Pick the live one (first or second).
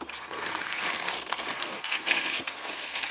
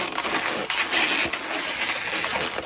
second